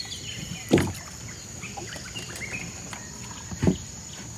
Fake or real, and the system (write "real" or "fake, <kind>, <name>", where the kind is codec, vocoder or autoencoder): real